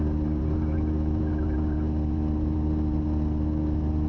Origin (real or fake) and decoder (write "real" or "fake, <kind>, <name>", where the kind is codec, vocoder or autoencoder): real